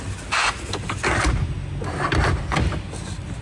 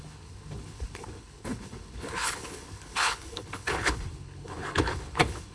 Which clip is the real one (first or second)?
first